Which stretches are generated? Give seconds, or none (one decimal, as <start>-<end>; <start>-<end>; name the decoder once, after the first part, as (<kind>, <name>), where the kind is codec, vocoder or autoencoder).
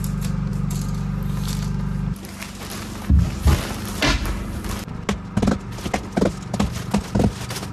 none